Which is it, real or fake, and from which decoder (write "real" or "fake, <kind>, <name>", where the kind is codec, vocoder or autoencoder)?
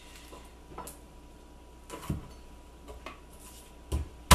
real